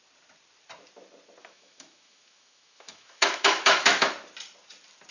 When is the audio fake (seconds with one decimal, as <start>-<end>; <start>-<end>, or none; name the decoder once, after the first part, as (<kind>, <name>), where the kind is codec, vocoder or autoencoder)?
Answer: 1.4-4.1 (autoencoder, DAC-VAE)